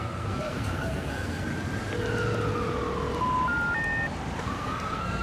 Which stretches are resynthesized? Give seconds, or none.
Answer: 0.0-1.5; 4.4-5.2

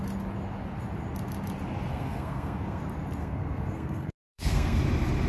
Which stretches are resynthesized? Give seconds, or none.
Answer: 1.9-2.8; 3.2-4.8